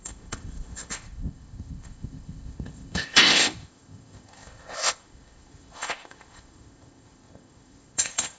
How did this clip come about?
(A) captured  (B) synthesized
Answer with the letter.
B